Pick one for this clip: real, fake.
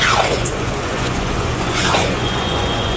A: fake